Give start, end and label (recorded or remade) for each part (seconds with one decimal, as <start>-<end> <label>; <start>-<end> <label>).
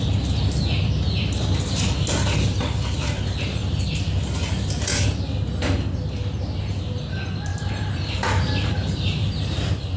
0.0-3.6 recorded; 3.6-5.2 remade; 5.2-9.2 recorded; 9.2-10.0 remade